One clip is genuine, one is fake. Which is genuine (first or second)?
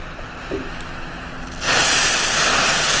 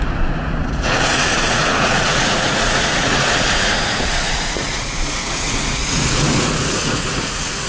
first